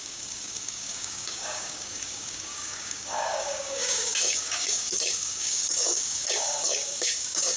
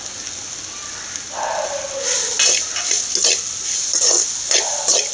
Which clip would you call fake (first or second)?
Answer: first